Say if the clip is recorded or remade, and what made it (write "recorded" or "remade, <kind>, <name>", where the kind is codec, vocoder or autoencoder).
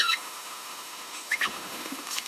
remade, autoencoder, DAC-VAE